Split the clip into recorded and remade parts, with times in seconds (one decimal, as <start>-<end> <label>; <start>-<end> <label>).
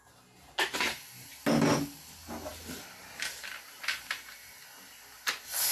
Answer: 0.0-5.7 recorded